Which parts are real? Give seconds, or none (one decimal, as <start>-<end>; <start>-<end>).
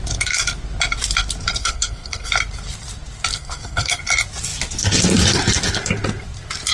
0.0-1.6; 2.3-3.3; 4.0-6.7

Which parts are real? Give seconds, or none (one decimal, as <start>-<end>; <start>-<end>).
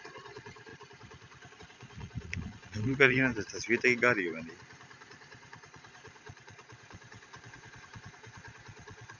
0.7-1.6; 3.3-5.1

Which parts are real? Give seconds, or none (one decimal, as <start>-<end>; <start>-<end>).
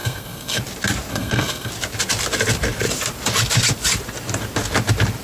0.6-1.1; 1.7-5.2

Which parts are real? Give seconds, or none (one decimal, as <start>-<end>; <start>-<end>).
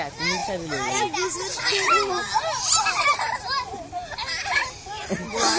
0.0-5.6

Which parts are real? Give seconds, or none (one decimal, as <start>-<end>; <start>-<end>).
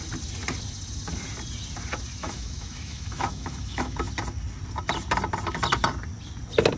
0.0-2.2; 4.1-6.8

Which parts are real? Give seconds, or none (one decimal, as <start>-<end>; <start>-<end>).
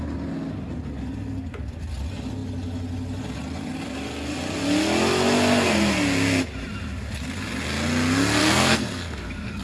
0.0-8.4